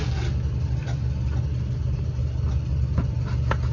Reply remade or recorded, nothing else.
recorded